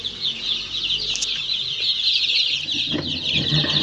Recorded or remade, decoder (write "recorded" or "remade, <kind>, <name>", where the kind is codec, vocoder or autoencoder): recorded